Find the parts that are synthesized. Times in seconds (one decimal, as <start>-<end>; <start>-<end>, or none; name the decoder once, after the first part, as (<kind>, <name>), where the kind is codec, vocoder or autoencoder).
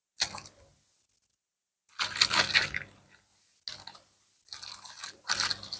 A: none